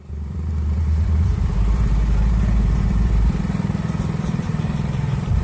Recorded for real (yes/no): no